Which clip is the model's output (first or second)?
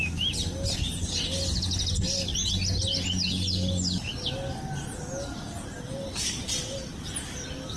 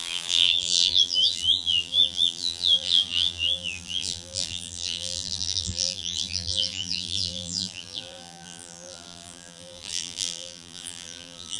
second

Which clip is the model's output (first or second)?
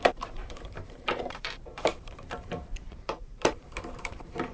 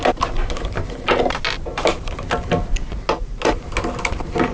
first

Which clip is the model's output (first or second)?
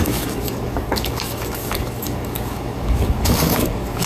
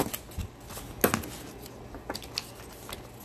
first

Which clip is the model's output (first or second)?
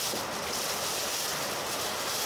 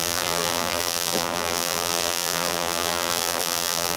second